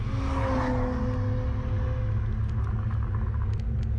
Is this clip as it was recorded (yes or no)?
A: yes